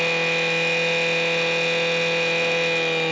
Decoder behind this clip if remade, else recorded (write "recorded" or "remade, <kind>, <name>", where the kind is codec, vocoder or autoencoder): recorded